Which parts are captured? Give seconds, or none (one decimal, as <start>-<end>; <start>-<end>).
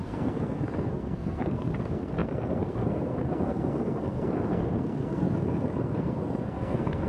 none